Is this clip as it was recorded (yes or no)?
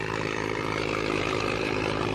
no